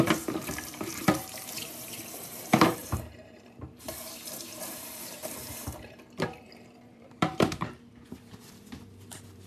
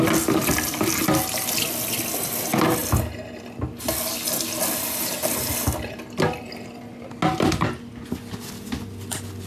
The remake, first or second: first